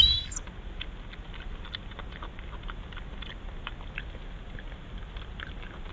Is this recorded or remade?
recorded